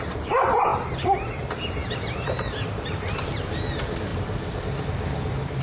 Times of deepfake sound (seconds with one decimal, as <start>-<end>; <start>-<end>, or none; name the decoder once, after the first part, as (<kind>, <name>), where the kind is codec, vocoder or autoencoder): 0.7-1.4 (vocoder, BigVGAN v2); 1.8-3.5